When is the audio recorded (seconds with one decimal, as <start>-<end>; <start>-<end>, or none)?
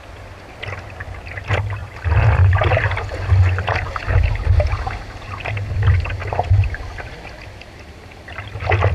0.0-1.8; 5.0-6.2; 6.8-8.9